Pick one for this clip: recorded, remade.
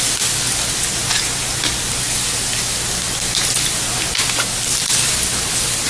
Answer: recorded